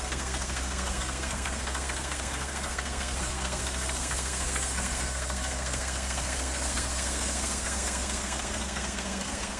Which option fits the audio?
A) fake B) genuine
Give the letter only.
A